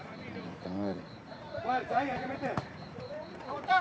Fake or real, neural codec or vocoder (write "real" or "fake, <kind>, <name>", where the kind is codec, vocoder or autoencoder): fake, vocoder, Vocos